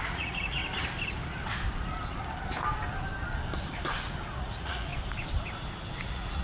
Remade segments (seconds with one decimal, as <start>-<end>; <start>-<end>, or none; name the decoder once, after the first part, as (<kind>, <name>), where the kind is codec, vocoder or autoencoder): 0.0-0.6 (vocoder, Vocos); 4.4-4.9; 6.0-6.4